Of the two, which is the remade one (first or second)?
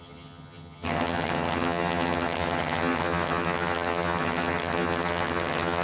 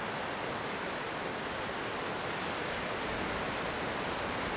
first